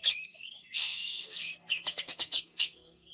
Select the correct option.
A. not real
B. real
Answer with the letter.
A